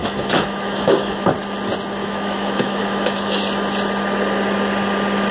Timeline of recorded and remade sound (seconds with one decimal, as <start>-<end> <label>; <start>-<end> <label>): 0.0-1.3 remade; 1.3-2.0 recorded; 2.0-3.4 remade; 3.4-5.3 recorded